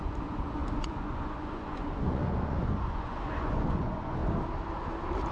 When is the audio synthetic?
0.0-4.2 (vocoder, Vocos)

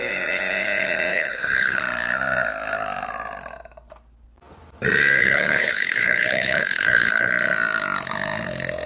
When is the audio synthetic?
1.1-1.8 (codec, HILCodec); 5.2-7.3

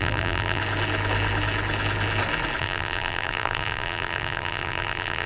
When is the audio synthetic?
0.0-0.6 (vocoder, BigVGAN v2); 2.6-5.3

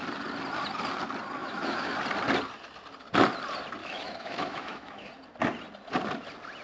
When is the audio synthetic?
1.4-1.9 (autoencoder, DAC-VAE); 3.8-5.1

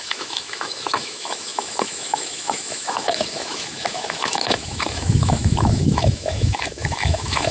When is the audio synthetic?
0.0-7.5 (autoencoder, DAC-VAE)